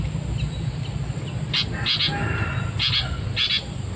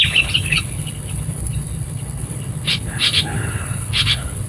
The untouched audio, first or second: first